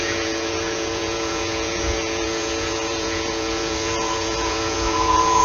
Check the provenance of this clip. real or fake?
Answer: fake